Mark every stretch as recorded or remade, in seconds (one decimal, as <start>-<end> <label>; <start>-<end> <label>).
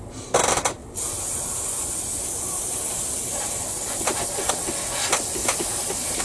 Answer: 0.0-0.8 recorded; 0.8-4.5 remade; 4.5-5.4 recorded; 5.4-6.2 remade